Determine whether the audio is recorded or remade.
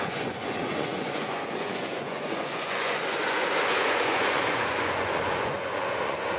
remade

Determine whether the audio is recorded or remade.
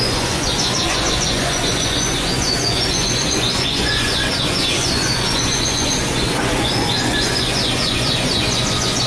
remade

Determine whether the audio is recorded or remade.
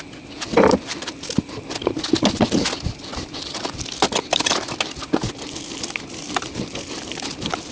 recorded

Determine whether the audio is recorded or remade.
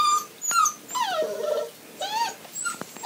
recorded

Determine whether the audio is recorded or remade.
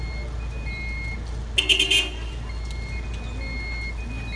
recorded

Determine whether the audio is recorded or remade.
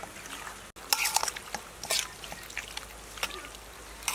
recorded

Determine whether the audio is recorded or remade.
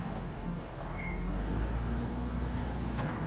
remade